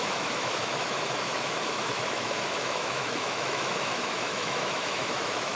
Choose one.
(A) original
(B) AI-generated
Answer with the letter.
B